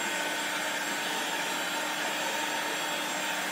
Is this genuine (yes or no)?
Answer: yes